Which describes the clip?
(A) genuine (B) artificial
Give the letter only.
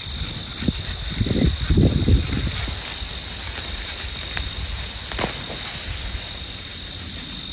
A